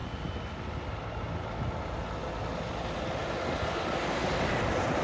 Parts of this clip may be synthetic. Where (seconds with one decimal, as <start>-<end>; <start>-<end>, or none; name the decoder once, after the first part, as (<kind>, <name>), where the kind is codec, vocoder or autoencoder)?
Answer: 4.2-5.0 (vocoder, BigVGAN v2)